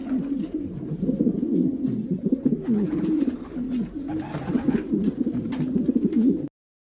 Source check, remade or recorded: recorded